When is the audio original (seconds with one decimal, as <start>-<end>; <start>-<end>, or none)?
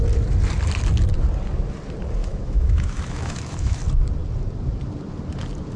0.0-2.2; 3.8-5.8